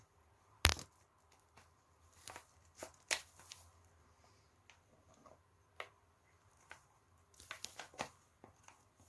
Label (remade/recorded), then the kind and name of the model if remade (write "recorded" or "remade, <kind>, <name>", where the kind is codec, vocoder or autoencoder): recorded